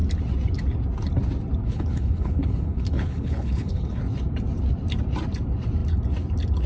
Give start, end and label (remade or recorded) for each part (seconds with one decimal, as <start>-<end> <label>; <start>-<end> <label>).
0.0-1.6 recorded; 1.6-4.0 remade; 4.0-6.7 recorded